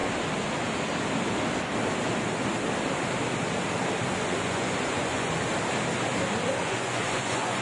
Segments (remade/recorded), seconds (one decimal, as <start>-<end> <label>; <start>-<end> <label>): 0.0-4.2 recorded; 4.2-5.3 remade; 5.3-6.6 recorded; 6.6-7.6 remade